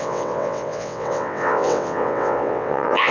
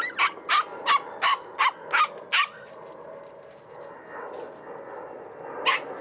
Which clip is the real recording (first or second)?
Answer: second